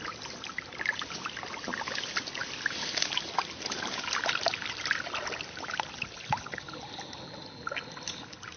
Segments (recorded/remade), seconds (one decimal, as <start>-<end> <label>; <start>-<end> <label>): 0.0-8.6 recorded